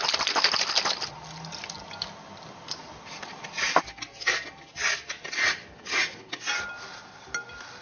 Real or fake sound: real